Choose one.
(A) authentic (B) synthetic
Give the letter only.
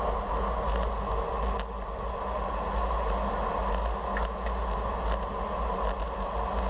A